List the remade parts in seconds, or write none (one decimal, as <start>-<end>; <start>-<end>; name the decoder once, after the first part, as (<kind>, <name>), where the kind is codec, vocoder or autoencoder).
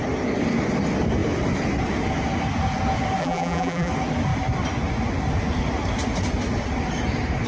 3.2-3.9 (vocoder, BigVGAN v2)